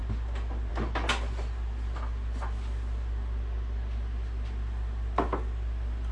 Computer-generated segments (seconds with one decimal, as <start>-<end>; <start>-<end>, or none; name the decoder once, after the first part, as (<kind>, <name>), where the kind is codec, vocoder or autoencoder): none